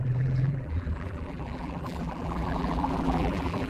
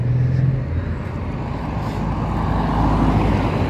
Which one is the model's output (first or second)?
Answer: first